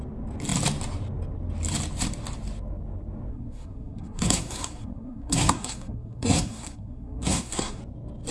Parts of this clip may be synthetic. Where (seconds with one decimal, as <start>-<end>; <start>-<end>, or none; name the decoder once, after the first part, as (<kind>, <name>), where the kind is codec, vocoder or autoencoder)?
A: 3.3-7.8 (codec, SNAC)